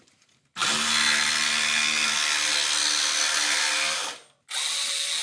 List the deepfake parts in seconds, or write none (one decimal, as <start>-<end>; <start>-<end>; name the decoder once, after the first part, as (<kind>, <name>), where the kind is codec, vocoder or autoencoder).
none